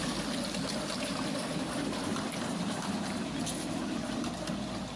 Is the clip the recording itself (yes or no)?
yes